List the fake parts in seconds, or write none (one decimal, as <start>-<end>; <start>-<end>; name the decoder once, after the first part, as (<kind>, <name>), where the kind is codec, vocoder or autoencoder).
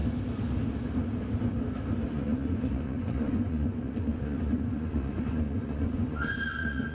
2.1-6.9 (vocoder, Vocos)